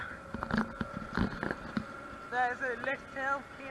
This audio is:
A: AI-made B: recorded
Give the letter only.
B